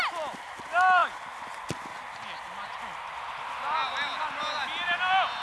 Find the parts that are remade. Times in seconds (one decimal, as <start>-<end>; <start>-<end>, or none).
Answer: none